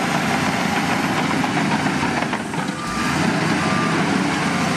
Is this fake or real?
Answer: real